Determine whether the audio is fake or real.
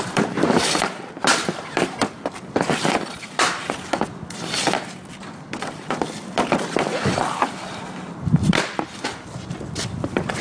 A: fake